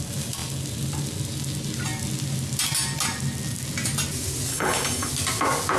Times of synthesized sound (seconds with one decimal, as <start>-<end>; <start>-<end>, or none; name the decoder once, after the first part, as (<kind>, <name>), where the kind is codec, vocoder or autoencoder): 4.5-5.1 (codec, HILCodec)